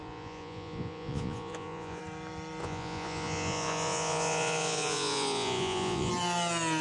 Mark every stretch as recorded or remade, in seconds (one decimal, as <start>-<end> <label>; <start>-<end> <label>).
0.0-2.0 remade; 2.0-2.6 recorded; 2.6-6.1 remade; 6.1-6.8 recorded